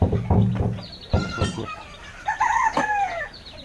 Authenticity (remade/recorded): recorded